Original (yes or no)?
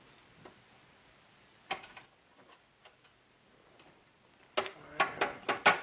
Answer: yes